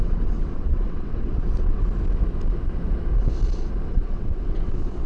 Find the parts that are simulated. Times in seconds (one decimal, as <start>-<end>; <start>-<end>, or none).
0.0-1.8; 3.9-5.1